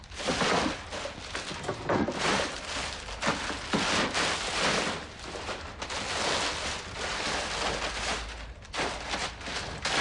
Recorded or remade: recorded